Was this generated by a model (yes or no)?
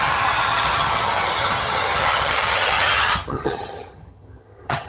yes